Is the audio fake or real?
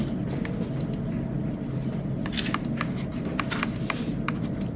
real